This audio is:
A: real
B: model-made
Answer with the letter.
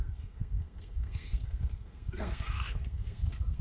B